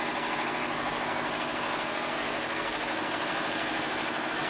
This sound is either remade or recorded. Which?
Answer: remade